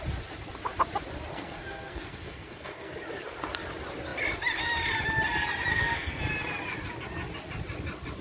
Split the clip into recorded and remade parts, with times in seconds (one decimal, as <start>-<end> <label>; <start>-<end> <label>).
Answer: 0.0-1.3 recorded; 1.3-2.9 remade; 2.9-5.7 recorded; 5.7-6.2 remade; 6.2-8.2 recorded